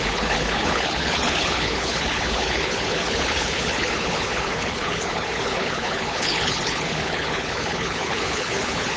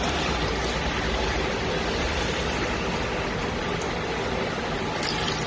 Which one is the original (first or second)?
second